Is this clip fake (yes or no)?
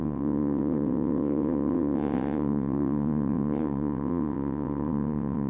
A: yes